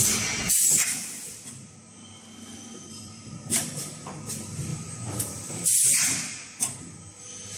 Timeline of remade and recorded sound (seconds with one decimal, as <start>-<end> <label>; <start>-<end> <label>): 0.0-2.7 recorded; 2.7-4.0 remade; 4.0-7.6 recorded